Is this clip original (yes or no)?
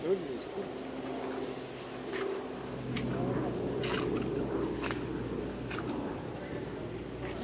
yes